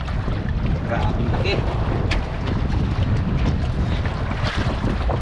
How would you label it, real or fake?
fake